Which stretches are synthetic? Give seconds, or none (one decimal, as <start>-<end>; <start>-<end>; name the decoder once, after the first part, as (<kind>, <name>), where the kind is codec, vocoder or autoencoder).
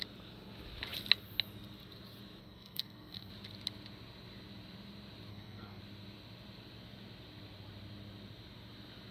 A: 2.4-3.3 (codec, SNAC); 5.3-5.8